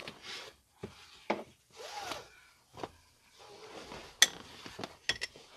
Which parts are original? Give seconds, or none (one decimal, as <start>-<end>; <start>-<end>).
3.4-5.6